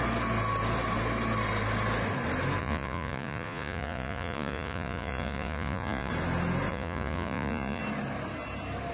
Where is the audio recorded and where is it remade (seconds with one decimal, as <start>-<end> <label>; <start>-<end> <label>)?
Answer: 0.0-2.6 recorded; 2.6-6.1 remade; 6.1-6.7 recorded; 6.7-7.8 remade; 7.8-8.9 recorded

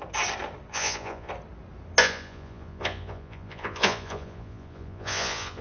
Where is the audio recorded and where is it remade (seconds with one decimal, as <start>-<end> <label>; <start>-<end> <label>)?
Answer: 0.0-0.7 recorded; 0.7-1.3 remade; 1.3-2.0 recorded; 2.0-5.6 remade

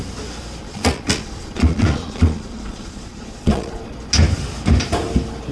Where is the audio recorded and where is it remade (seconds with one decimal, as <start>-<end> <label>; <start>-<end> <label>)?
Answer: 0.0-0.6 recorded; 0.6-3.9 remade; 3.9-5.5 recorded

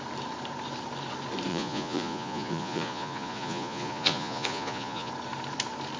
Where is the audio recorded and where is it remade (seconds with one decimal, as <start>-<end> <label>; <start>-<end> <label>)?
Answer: 0.0-1.5 recorded; 1.5-5.1 remade; 5.1-6.0 recorded

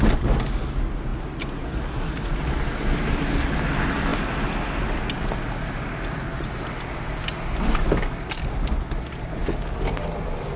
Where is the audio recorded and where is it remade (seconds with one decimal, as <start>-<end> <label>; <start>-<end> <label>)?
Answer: 0.0-10.6 recorded

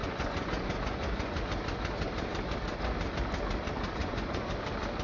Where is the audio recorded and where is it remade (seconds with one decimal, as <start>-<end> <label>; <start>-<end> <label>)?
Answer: 0.0-1.4 remade; 1.4-4.0 recorded; 4.0-4.5 remade; 4.5-5.0 recorded

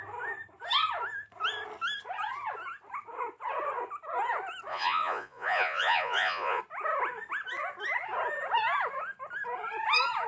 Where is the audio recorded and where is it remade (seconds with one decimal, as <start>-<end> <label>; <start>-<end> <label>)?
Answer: 0.0-4.7 recorded; 4.7-6.6 remade; 6.6-10.3 recorded